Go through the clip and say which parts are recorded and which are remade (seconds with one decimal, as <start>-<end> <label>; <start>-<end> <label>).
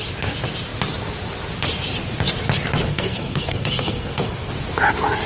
0.0-2.9 recorded; 2.9-4.5 remade; 4.5-5.3 recorded